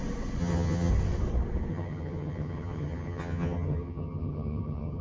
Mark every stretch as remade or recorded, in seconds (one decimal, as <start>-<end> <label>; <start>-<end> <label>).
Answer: 0.0-0.4 recorded; 0.4-0.9 remade; 0.9-1.7 recorded; 1.7-5.0 remade